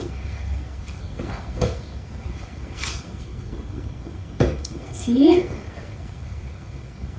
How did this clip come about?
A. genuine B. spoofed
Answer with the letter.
B